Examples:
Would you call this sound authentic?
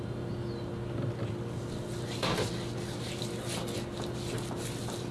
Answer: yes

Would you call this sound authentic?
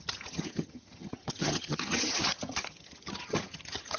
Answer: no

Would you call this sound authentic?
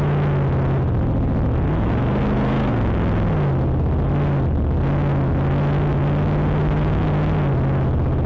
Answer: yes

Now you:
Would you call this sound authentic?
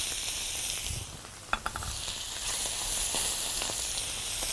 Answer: yes